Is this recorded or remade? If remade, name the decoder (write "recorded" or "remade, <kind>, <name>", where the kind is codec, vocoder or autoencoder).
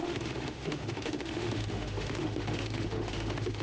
remade, autoencoder, DAC-VAE